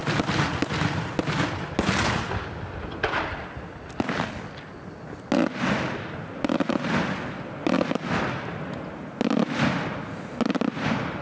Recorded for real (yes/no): yes